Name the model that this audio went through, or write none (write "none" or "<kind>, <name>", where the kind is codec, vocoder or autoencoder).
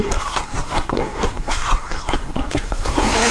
codec, SNAC